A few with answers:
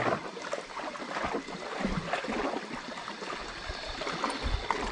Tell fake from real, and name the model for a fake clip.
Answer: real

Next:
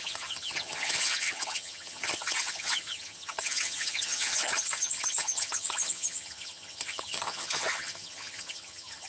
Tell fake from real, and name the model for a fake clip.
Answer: fake, vocoder, HiFi-GAN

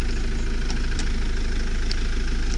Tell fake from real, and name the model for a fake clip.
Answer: real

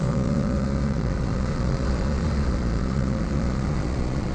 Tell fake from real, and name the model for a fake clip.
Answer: fake, vocoder, Vocos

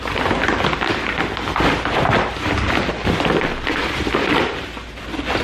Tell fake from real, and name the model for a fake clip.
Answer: real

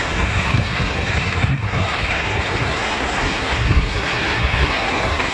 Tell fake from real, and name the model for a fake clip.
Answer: fake, codec, SNAC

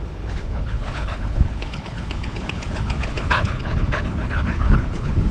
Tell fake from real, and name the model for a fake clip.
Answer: fake, codec, HILCodec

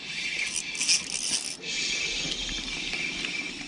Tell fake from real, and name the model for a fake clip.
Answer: real